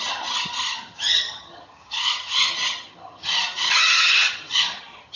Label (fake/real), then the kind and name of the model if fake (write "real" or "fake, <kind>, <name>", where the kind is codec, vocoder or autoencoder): fake, vocoder, HiFi-GAN